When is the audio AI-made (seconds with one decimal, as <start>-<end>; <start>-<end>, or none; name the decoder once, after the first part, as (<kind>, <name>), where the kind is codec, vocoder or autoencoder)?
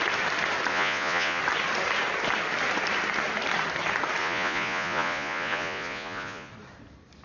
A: 0.7-1.4 (vocoder, Vocos); 4.2-6.5